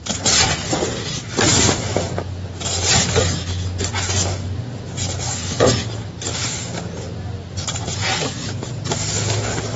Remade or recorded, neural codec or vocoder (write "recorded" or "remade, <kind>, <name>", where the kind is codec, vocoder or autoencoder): recorded